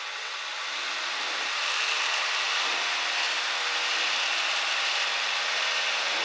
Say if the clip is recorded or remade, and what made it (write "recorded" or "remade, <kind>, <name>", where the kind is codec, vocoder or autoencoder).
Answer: remade, vocoder, BigVGAN v2